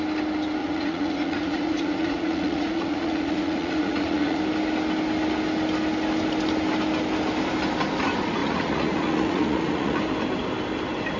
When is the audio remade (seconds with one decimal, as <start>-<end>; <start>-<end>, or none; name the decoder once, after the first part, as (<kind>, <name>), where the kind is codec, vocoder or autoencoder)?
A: 0.6-4.4 (vocoder, Vocos); 8.4-10.0